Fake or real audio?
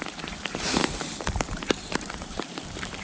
fake